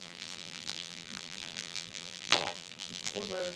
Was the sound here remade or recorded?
remade